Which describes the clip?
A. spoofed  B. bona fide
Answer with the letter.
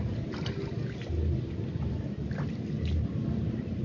B